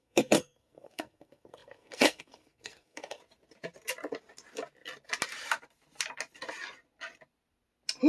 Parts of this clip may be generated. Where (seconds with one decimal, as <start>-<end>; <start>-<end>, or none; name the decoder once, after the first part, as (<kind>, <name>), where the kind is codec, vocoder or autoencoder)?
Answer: 0.0-3.2 (codec, SNAC)